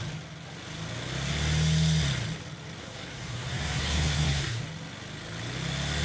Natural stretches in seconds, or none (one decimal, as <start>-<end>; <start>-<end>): 0.0-2.8; 4.6-6.0